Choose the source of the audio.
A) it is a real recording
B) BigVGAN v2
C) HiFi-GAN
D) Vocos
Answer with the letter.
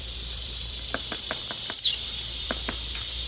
B